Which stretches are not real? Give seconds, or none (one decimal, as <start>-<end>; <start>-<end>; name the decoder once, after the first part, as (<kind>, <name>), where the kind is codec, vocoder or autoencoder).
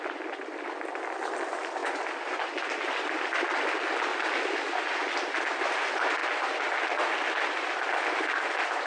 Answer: 0.0-1.8 (vocoder, BigVGAN v2); 2.9-4.1; 4.8-6.2; 7.8-8.9